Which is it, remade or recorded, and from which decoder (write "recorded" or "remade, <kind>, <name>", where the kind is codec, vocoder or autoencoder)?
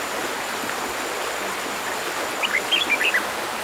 recorded